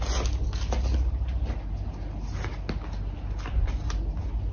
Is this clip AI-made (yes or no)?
no